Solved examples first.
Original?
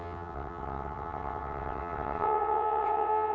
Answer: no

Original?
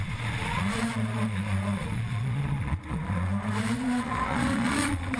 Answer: no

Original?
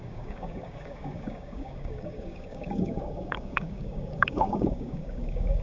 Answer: no